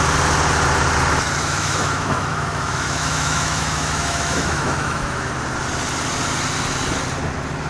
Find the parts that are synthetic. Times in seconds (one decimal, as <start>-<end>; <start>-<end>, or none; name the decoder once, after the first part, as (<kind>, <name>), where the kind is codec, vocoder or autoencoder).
1.4-5.3 (autoencoder, DAC-VAE)